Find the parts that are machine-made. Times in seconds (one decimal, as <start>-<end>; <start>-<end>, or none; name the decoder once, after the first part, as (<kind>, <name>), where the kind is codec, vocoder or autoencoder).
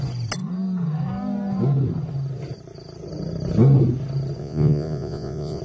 4.4-5.6 (vocoder, Vocos)